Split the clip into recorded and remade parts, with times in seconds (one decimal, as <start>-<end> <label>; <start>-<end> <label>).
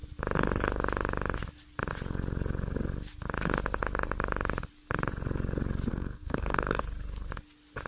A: 0.0-5.9 recorded; 5.9-6.8 remade; 6.8-7.9 recorded